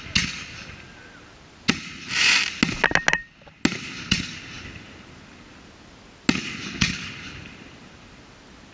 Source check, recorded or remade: recorded